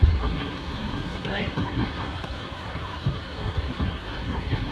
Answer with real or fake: fake